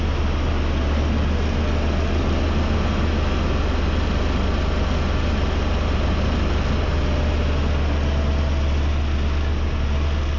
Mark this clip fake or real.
real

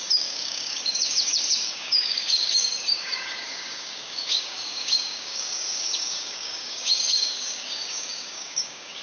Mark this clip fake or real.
fake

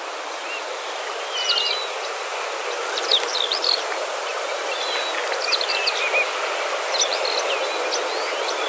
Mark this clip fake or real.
real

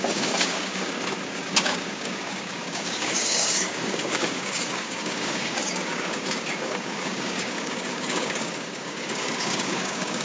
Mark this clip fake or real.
fake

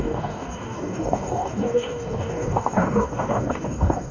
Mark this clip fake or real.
fake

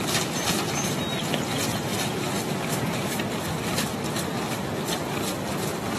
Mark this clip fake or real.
real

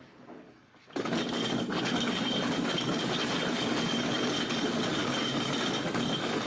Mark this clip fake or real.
fake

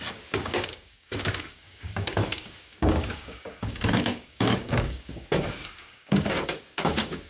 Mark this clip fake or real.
fake